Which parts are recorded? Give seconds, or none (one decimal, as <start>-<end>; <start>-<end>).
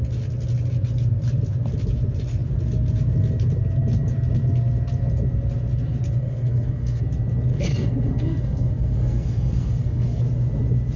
0.0-6.2; 7.0-7.5; 10.2-11.0